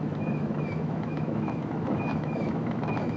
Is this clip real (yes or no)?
no